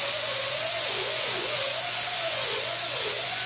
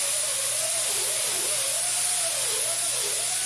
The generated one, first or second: first